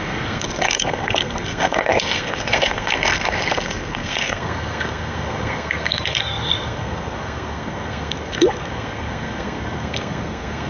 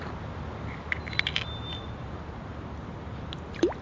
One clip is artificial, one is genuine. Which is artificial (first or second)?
first